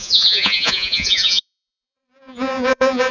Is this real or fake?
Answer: fake